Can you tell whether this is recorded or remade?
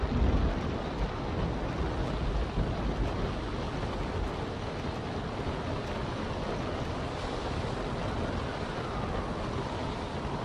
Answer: recorded